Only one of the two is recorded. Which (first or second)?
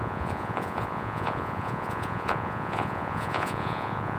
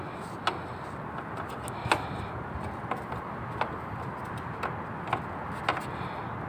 second